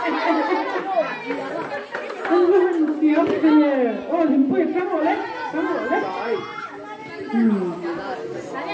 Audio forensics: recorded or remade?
recorded